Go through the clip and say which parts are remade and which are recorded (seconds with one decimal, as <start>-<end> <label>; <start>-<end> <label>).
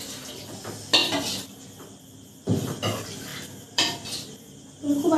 0.0-1.0 recorded; 1.0-2.0 remade; 2.0-3.3 recorded; 3.3-4.4 remade; 4.4-5.2 recorded